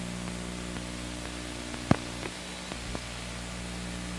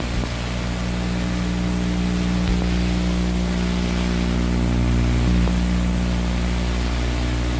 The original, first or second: first